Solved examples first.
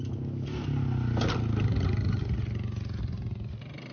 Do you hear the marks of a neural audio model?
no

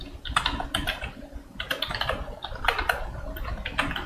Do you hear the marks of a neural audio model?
no